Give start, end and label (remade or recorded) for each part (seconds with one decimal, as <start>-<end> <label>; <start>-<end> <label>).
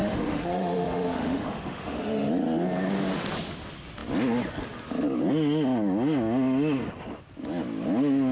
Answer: 0.0-2.3 remade; 2.3-8.3 recorded